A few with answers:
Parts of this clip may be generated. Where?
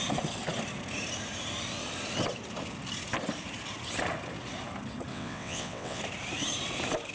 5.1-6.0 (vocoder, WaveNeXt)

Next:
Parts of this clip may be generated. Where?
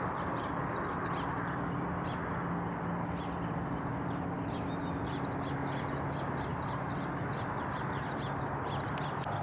none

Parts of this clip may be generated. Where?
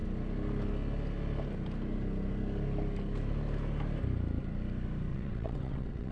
5.1-6.1 (vocoder, WaveNeXt)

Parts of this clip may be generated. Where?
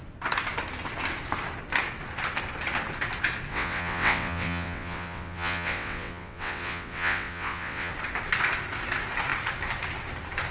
3.5-7.9 (vocoder, WaveNeXt)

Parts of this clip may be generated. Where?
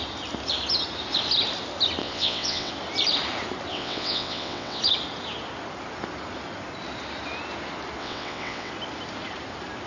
2.0-2.7 (vocoder, WaveNeXt); 3.7-4.8; 8.0-8.7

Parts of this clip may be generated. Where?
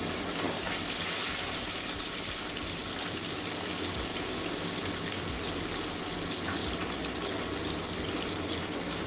none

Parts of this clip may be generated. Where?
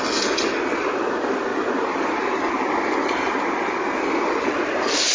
none